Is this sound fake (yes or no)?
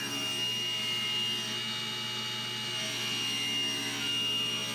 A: no